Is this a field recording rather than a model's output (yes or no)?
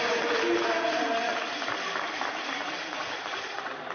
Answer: yes